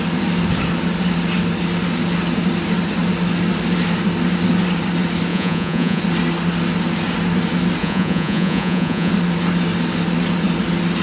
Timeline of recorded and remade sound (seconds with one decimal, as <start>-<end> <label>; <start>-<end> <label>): 0.0-5.3 recorded; 5.3-6.0 remade; 6.0-7.8 recorded; 7.8-9.1 remade; 9.1-11.0 recorded